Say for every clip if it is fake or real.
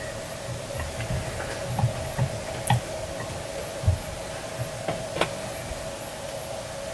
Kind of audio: real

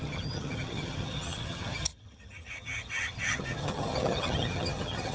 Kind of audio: fake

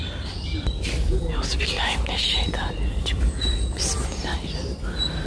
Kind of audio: real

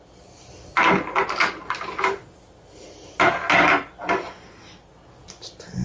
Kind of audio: real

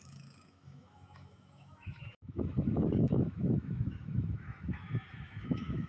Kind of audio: fake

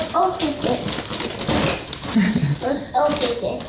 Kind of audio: real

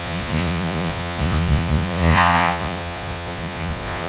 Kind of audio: fake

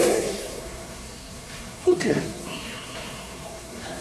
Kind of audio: fake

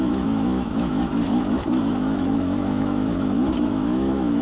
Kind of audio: fake